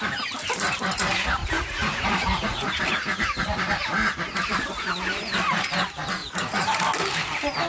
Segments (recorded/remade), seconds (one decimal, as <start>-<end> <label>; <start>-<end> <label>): 0.0-1.4 recorded; 1.4-2.8 remade; 2.8-6.2 recorded; 6.2-6.8 remade; 6.8-7.7 recorded